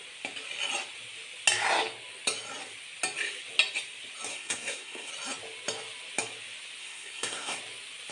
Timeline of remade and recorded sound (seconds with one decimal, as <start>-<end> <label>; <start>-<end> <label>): 0.0-4.3 recorded; 4.3-5.1 remade; 5.1-6.8 recorded; 6.8-7.6 remade; 7.6-8.1 recorded